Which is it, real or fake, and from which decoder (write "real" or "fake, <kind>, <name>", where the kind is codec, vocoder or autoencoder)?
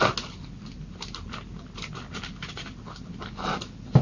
real